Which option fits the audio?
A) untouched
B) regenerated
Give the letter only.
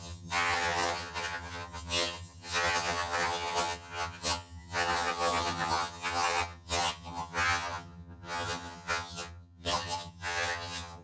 B